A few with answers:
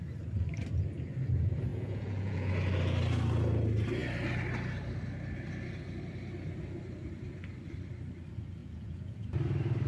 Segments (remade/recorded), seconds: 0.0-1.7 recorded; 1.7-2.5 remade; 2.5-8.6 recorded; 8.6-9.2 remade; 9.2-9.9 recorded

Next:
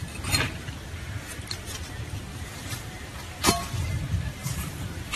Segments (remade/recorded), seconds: 0.0-2.3 recorded; 2.3-3.5 remade; 3.5-4.4 recorded; 4.4-5.2 remade

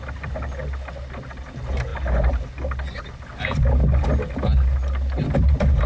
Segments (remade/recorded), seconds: 0.0-5.9 recorded